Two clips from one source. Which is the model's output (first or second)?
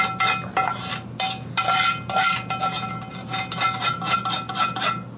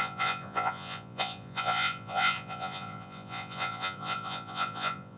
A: second